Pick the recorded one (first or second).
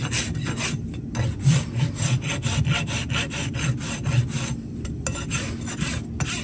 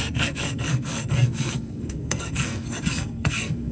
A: first